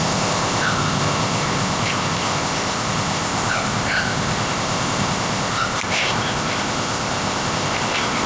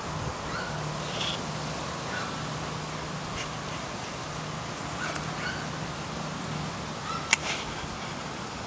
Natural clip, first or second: second